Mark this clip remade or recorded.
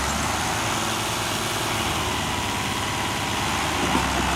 recorded